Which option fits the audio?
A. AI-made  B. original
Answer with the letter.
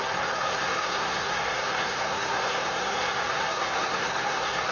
A